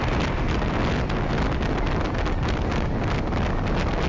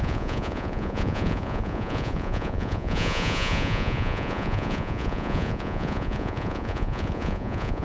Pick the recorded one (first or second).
first